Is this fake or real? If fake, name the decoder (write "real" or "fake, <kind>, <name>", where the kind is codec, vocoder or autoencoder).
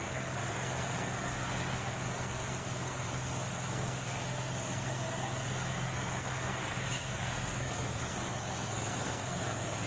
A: fake, codec, SNAC